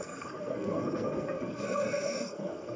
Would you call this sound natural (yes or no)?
no